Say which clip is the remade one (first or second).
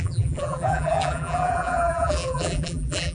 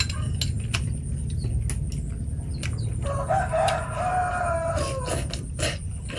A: first